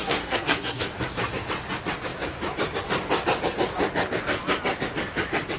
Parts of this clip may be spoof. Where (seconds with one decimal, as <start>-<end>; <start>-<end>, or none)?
0.0-0.8